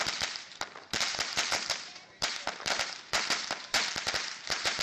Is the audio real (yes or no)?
no